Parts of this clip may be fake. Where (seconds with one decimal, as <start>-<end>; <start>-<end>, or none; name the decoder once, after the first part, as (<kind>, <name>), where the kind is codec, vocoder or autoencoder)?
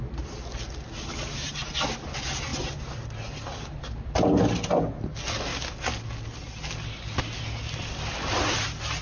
none